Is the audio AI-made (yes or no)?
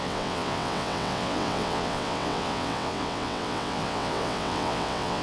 yes